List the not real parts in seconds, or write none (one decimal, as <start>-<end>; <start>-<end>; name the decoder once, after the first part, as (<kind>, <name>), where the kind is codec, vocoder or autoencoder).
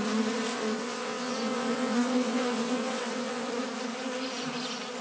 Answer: 0.5-3.5 (vocoder, WaveNeXt)